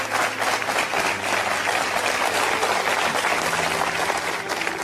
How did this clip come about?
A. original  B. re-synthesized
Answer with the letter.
A